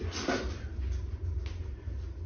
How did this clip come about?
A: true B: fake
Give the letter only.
A